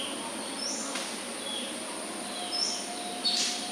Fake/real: fake